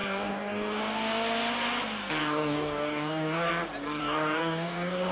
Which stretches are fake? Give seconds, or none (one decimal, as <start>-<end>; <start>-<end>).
0.0-0.8; 2.2-3.5; 4.0-5.1